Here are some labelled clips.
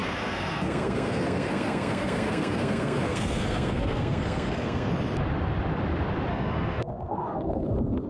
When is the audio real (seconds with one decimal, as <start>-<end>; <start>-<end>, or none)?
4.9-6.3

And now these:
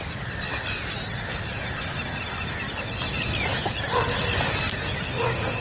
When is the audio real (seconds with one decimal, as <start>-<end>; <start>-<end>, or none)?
0.0-5.6

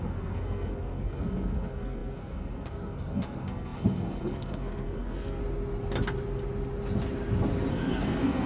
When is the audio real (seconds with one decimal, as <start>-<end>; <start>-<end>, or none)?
5.4-7.7